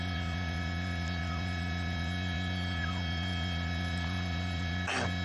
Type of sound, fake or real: real